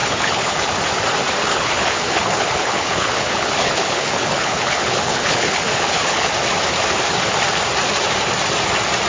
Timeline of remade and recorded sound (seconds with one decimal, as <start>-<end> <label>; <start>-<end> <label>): 0.0-0.7 remade; 0.7-1.4 recorded; 1.4-6.3 remade; 6.3-9.1 recorded